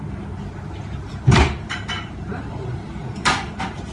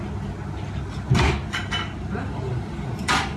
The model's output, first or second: first